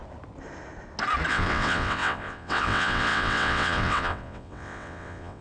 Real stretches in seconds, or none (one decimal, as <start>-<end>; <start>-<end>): 0.0-1.3